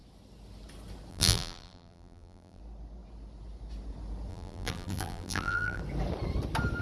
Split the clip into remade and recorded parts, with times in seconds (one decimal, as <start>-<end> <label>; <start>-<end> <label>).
0.0-1.1 recorded; 1.1-2.6 remade; 2.6-4.3 recorded; 4.3-5.8 remade; 5.8-6.8 recorded